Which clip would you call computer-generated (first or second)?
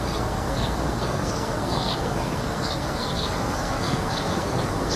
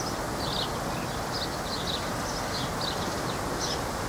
first